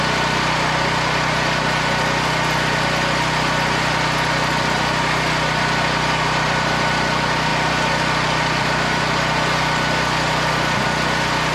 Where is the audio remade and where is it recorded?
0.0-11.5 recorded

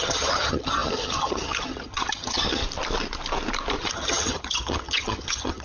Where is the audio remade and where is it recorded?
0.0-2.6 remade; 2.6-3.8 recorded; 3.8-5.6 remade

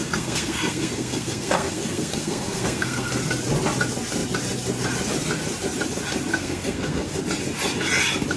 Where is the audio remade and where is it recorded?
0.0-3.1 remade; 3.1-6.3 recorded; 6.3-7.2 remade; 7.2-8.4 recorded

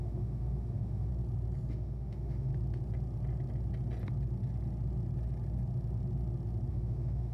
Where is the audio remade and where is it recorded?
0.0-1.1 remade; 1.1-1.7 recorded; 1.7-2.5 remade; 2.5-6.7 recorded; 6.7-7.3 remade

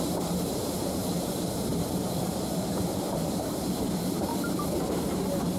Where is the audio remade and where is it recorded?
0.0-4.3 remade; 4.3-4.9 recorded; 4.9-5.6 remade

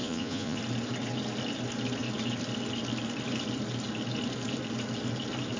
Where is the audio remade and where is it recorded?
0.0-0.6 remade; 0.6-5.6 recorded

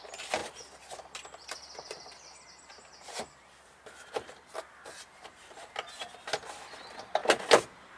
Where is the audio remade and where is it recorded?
0.0-0.4 recorded; 0.4-4.5 remade; 4.5-8.0 recorded

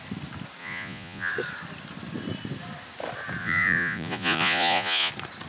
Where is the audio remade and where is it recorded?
0.0-0.6 recorded; 0.6-1.3 remade; 1.3-3.4 recorded; 3.4-5.1 remade; 5.1-5.5 recorded